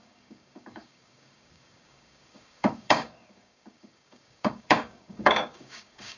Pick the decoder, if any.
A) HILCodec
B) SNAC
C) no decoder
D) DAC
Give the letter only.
D